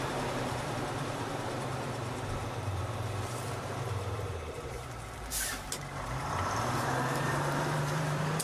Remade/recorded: remade